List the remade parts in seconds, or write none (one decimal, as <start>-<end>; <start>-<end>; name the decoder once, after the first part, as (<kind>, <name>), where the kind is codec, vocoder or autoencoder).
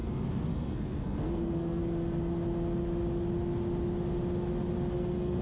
0.0-1.8 (codec, SNAC); 5.0-5.4